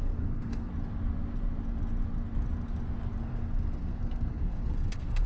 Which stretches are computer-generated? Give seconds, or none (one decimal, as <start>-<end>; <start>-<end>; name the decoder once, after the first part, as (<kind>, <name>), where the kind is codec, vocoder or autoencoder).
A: 0.0-0.7 (codec, SNAC); 3.2-5.3